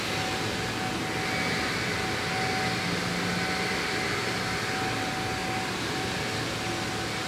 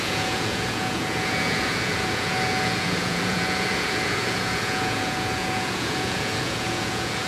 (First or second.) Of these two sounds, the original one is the first